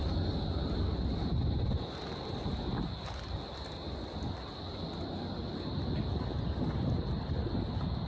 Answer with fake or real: real